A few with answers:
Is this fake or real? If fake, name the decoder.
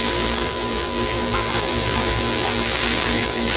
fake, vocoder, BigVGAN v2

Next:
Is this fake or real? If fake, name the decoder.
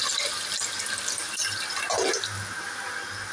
real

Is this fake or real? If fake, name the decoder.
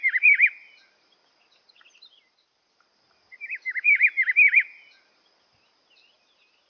real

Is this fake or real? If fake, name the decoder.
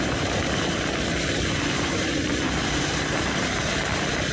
fake, vocoder, BigVGAN v2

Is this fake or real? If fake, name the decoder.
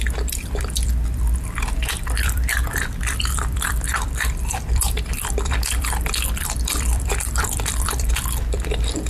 fake, vocoder, BigVGAN v2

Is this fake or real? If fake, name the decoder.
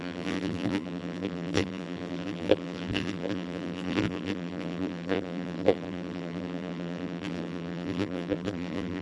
fake, vocoder, BigVGAN v2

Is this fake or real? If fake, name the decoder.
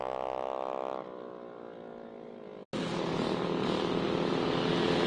real